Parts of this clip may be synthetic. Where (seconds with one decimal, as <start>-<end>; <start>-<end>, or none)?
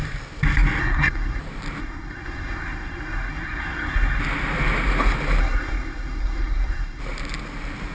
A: 0.8-1.4; 1.8-4.2; 5.4-7.0